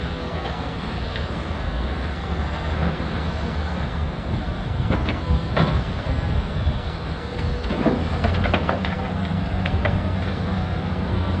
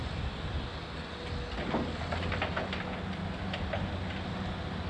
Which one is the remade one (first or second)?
first